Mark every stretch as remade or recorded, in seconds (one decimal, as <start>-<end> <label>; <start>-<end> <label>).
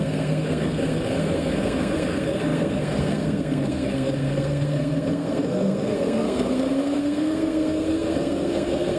0.0-9.0 remade